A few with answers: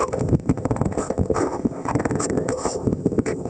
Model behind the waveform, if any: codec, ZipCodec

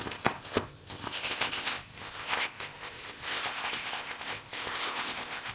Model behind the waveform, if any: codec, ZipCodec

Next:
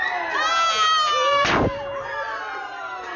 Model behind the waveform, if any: none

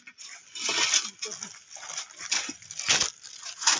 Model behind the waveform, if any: none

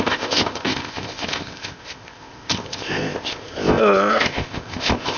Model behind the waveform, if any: codec, ZipCodec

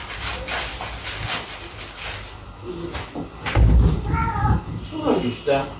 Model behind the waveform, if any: none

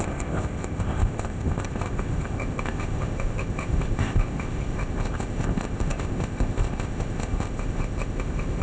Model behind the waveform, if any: codec, ZipCodec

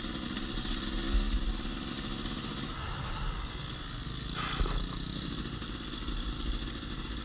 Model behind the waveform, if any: none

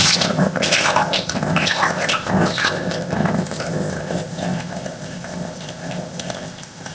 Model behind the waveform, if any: codec, ZipCodec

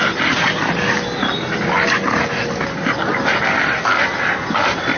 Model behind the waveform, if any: none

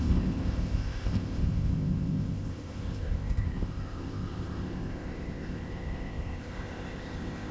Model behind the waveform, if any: codec, ZipCodec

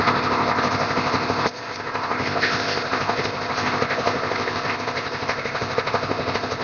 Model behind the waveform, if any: codec, ZipCodec